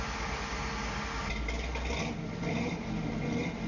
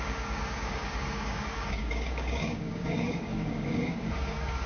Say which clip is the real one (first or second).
first